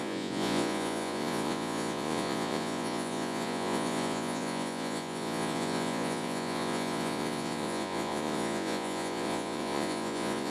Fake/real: fake